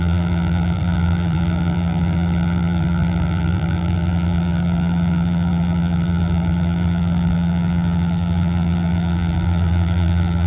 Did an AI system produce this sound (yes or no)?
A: yes